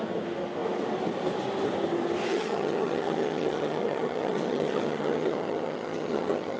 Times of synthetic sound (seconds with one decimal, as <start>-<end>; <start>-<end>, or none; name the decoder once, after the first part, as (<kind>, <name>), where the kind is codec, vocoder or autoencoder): 2.3-6.6 (vocoder, HiFi-GAN)